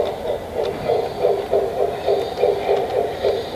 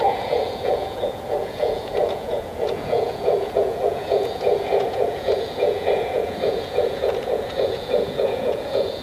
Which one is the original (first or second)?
first